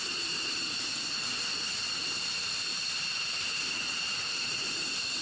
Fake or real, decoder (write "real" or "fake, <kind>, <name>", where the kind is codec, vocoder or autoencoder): fake, vocoder, BigVGAN v2